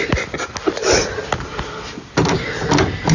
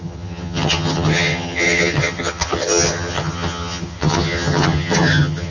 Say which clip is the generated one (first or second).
second